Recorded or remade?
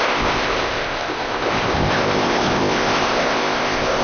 remade